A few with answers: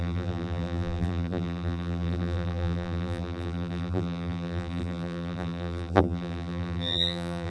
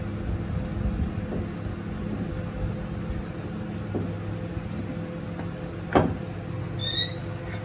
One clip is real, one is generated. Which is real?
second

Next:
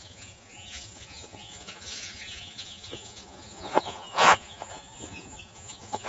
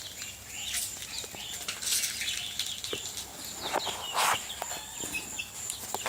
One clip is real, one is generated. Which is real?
second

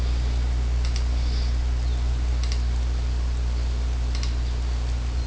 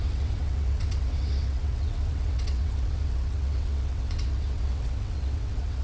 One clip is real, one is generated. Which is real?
first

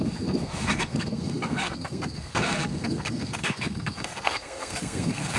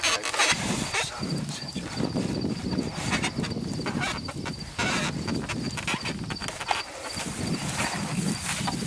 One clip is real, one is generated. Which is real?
second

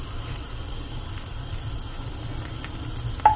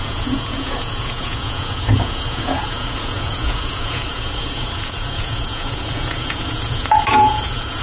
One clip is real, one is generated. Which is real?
first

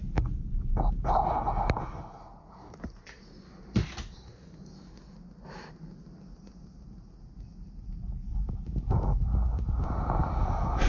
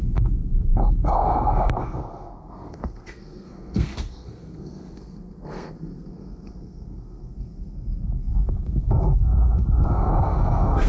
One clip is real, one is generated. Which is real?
first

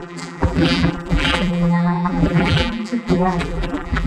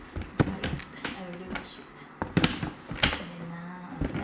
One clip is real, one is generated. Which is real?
second